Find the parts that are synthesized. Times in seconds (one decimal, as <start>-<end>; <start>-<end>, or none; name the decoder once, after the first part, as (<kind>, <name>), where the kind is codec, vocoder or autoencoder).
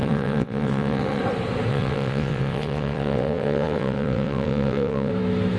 0.0-1.2 (vocoder, WaveNeXt); 1.7-5.1